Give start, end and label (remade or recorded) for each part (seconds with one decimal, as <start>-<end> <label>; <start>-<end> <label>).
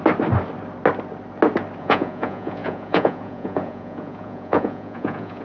0.0-1.8 recorded; 1.8-5.4 remade